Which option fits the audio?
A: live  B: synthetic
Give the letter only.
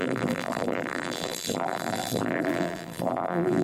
B